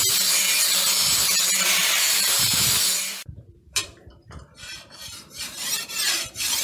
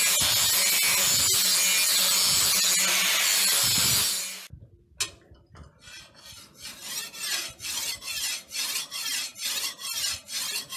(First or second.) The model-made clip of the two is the first